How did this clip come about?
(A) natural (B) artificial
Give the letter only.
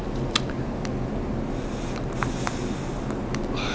A